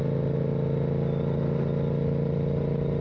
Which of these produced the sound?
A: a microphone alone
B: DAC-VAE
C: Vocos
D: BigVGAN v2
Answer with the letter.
A